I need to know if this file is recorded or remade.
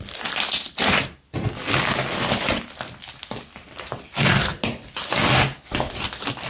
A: recorded